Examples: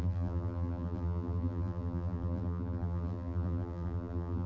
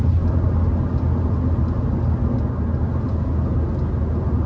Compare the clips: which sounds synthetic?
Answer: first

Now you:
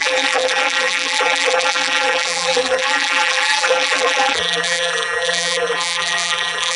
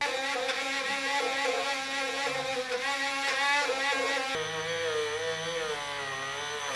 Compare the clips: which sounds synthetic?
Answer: first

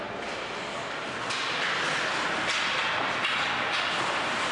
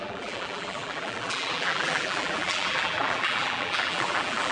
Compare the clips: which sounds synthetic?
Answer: second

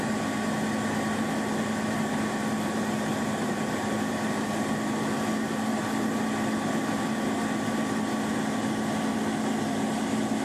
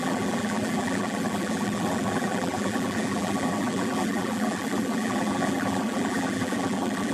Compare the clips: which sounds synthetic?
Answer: second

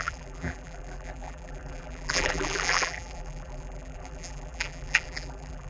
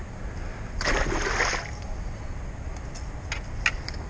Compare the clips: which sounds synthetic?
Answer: first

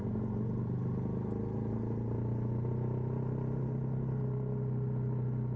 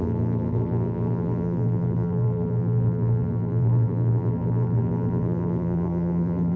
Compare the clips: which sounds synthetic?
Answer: second